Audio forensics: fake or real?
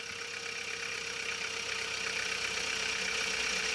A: real